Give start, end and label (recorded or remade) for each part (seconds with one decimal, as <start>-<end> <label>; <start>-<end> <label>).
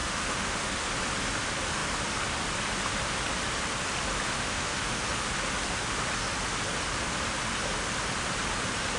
0.0-0.9 remade; 0.9-4.3 recorded; 4.3-5.0 remade; 5.0-9.0 recorded